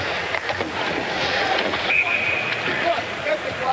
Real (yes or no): no